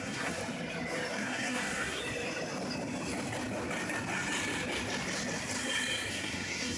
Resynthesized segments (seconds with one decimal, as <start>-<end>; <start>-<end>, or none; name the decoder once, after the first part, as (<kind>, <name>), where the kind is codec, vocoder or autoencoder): 0.0-0.4 (codec, SNAC); 1.1-2.0; 6.1-6.8